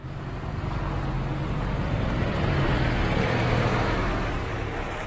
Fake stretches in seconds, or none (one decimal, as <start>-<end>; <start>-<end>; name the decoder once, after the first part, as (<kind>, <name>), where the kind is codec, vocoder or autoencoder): 3.7-5.1 (autoencoder, DAC-VAE)